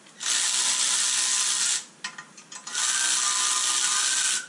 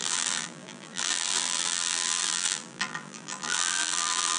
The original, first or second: first